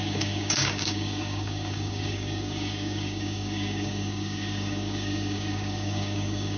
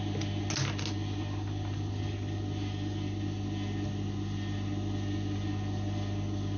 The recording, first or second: second